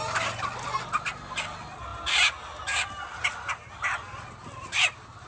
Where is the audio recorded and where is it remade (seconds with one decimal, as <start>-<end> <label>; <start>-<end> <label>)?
0.0-5.3 recorded